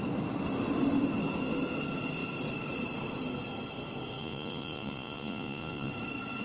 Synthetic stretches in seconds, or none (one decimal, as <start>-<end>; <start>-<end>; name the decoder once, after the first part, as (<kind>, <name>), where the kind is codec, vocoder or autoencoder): 4.2-5.9 (vocoder, Vocos)